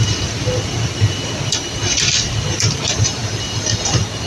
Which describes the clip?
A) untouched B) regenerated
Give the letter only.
B